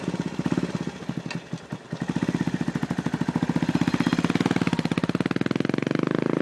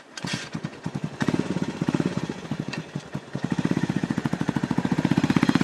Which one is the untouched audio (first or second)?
first